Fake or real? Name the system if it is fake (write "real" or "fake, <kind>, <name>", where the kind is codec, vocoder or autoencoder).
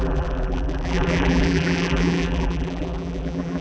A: fake, vocoder, BigVGAN v2